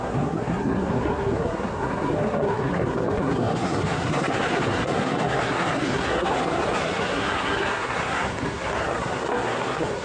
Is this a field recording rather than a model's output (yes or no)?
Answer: no